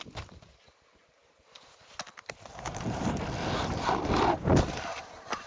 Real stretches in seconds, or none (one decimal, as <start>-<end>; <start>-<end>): 0.0-5.5